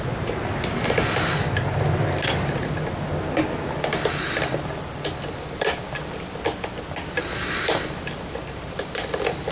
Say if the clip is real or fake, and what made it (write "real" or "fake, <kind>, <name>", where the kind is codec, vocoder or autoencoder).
real